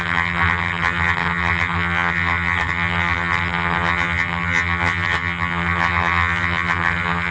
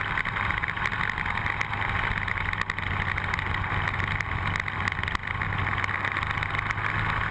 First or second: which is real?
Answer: second